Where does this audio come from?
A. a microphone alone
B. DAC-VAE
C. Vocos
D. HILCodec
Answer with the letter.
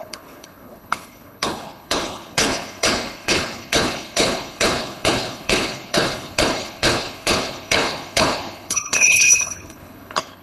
D